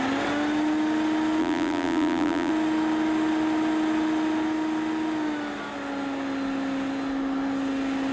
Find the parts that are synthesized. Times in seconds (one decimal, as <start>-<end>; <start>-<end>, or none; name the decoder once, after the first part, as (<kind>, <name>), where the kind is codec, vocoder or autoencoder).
1.4-2.5 (vocoder, BigVGAN v2)